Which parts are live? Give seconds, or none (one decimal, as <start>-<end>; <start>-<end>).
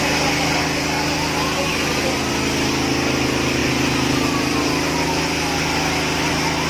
0.0-6.7